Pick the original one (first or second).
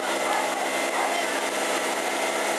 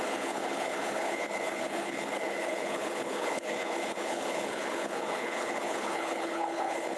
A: first